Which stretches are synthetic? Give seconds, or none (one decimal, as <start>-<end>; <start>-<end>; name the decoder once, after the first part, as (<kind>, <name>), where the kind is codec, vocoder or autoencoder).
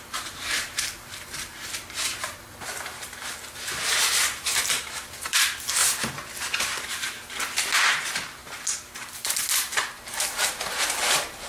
0.0-5.8 (vocoder, BigVGAN v2); 7.8-11.5